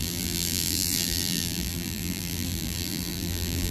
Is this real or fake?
fake